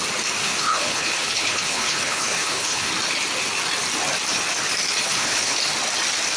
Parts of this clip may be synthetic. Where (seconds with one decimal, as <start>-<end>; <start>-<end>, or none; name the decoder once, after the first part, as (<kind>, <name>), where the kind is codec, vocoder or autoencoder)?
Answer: 0.4-2.9 (codec, HILCodec); 5.1-5.6

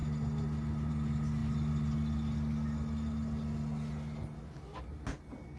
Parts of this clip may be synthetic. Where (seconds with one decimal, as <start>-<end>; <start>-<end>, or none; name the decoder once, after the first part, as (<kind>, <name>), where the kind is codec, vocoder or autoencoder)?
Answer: none

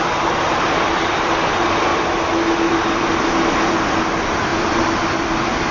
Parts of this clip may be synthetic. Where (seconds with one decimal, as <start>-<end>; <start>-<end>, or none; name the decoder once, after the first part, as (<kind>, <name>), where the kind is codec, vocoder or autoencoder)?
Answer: none